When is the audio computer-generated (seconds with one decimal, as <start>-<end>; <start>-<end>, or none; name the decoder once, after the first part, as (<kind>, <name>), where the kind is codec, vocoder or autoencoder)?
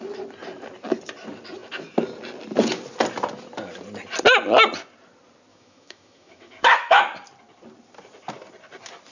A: 5.5-7.0 (autoencoder, DAC-VAE)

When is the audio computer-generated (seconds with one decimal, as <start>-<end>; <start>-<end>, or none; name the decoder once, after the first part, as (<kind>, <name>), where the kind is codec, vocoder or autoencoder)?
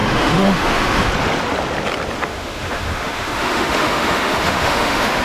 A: 0.0-1.1 (autoencoder, DAC-VAE); 2.2-5.2